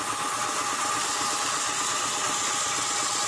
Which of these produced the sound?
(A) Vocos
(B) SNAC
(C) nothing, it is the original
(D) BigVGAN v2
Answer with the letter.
C